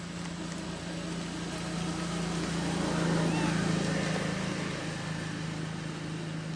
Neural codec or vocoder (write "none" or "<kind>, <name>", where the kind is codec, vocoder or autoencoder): none